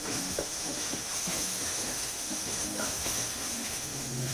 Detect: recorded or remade remade